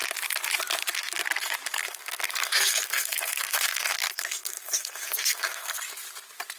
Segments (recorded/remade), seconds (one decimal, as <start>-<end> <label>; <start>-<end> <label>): 0.0-1.8 recorded; 1.8-5.8 remade; 5.8-6.6 recorded